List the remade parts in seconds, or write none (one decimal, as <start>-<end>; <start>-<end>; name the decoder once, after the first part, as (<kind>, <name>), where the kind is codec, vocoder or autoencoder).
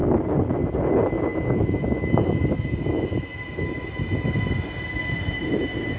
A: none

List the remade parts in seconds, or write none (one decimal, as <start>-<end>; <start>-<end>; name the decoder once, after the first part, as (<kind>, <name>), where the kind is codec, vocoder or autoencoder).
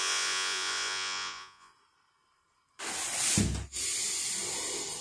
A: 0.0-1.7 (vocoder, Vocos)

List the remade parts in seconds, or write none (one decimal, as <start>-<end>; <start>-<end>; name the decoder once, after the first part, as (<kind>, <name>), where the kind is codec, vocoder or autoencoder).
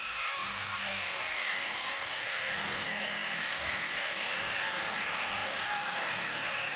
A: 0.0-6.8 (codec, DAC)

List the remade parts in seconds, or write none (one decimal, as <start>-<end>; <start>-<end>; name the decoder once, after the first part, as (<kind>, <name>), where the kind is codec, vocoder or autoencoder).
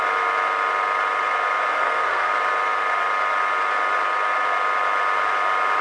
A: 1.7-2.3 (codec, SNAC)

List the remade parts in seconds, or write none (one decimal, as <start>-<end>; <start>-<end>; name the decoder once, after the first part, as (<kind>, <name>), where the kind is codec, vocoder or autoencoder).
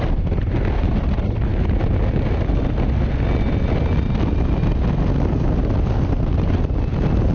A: none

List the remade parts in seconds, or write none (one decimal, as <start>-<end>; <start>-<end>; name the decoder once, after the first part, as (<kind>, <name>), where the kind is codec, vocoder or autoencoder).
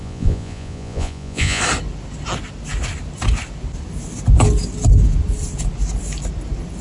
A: 0.0-1.6 (vocoder, Vocos)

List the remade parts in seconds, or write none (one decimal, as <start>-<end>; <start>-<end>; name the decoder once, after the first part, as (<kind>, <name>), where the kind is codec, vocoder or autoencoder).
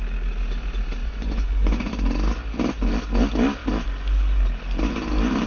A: 1.0-1.9 (vocoder, Vocos)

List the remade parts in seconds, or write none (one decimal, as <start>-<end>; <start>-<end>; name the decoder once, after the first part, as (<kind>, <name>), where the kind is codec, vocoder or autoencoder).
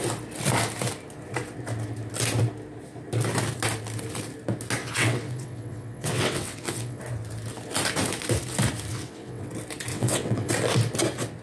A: 4.8-7.0 (vocoder, WaveNeXt); 8.9-9.5; 9.9-10.5